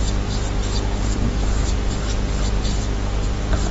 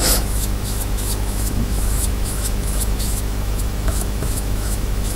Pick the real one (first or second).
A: first